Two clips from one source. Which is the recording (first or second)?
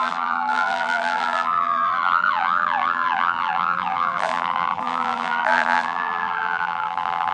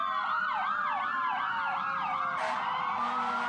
second